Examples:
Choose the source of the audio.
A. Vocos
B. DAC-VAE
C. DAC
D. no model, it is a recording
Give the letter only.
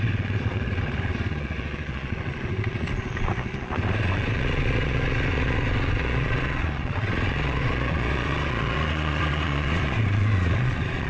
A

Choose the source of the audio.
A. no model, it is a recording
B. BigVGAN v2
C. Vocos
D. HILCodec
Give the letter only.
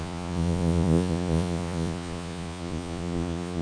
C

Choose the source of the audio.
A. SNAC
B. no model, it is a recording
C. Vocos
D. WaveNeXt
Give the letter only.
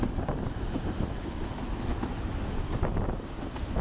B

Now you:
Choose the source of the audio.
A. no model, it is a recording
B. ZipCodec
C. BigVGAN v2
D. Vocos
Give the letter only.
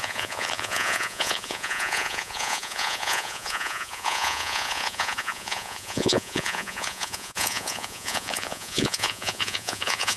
D